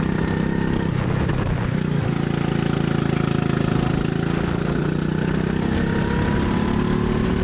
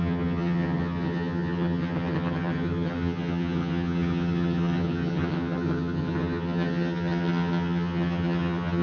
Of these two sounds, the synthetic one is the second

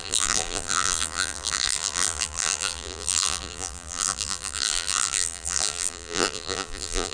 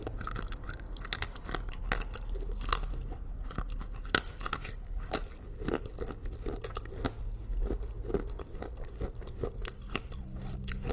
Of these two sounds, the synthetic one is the first